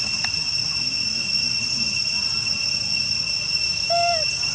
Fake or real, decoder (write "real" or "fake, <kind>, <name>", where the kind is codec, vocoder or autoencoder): real